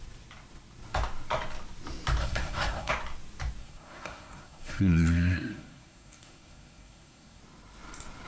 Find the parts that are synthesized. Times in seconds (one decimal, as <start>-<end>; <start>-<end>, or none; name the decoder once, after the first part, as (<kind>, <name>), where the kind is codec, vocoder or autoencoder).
2.2-2.9 (codec, SNAC); 3.6-7.4